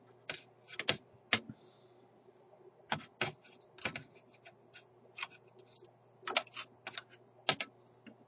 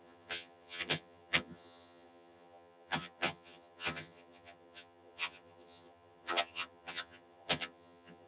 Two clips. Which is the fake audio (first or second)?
second